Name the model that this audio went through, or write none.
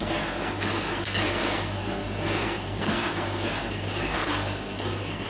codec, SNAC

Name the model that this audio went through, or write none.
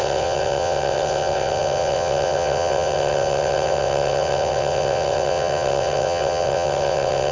vocoder, WaveNeXt